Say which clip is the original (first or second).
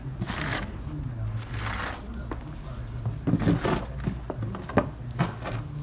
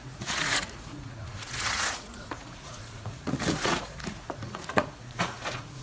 first